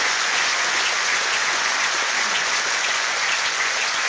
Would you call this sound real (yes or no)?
no